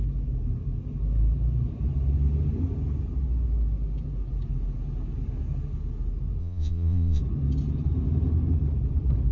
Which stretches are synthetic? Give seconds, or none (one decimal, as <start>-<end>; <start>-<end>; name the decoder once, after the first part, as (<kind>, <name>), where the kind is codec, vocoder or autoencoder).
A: 6.4-7.2 (vocoder, Vocos)